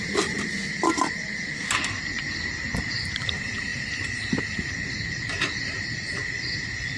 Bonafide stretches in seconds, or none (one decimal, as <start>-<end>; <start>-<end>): 0.0-7.0